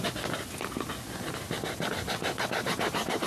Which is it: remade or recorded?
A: recorded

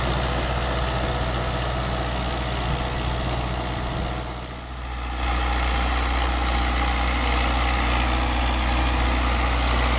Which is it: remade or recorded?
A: recorded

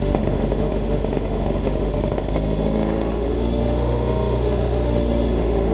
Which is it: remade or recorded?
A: remade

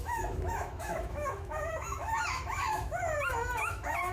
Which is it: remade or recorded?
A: remade